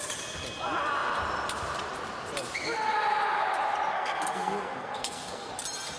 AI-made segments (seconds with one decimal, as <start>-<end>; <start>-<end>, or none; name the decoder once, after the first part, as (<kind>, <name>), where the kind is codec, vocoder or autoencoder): 3.9-5.5 (codec, SNAC)